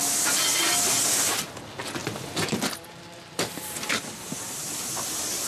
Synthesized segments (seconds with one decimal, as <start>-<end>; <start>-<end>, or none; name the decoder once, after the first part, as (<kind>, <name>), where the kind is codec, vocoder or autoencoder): 2.0-5.5 (vocoder, BigVGAN v2)